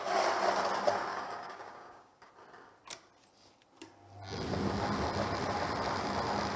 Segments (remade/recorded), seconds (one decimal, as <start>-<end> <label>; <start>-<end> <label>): 0.0-1.1 recorded; 1.1-2.3 remade; 2.3-6.6 recorded